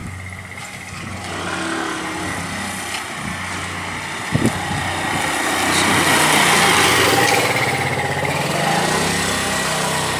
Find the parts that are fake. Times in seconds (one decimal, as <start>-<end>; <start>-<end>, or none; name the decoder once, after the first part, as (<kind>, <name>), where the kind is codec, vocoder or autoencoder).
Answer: none

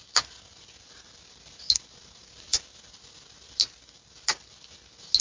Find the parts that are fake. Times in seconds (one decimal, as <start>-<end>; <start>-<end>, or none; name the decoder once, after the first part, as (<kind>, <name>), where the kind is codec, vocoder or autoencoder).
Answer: none

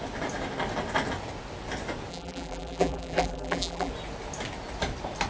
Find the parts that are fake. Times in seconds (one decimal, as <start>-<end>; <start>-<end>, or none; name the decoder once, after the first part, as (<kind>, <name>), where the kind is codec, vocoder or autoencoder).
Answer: 2.1-3.9 (vocoder, BigVGAN v2)

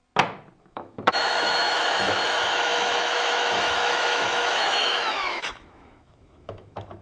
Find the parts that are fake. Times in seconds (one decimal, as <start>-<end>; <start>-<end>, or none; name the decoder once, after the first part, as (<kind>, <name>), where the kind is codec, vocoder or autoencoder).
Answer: 0.6-7.0 (autoencoder, DAC-VAE)

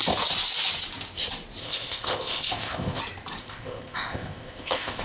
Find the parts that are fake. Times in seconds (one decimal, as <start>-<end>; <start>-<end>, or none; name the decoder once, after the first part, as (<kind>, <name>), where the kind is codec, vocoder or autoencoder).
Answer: 1.6-3.0 (codec, ZipCodec); 3.4-5.0

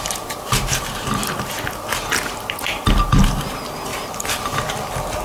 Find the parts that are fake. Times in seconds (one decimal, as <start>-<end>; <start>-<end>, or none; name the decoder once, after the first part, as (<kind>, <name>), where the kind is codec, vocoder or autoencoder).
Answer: 0.0-1.2 (vocoder, BigVGAN v2); 3.2-3.9